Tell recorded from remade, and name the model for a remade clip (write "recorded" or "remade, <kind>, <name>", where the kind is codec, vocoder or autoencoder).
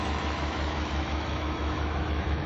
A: remade, autoencoder, DAC-VAE